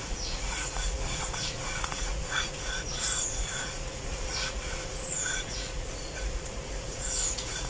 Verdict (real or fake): fake